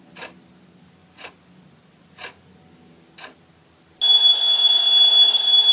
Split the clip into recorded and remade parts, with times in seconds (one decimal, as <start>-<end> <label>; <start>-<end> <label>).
0.0-5.7 recorded